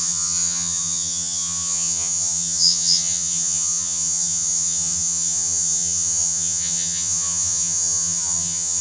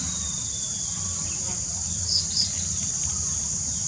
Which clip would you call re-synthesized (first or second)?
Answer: first